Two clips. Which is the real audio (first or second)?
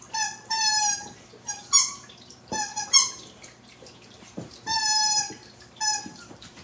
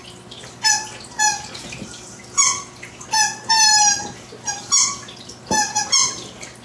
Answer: second